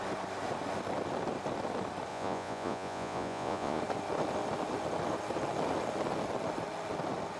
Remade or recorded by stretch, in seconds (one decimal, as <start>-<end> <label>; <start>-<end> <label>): 0.0-2.1 recorded; 2.1-3.8 remade; 3.8-7.4 recorded